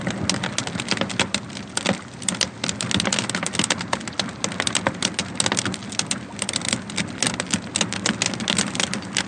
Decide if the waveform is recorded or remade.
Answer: recorded